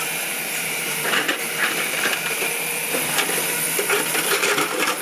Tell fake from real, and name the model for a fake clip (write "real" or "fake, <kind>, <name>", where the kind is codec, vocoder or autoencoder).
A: fake, vocoder, BigVGAN v2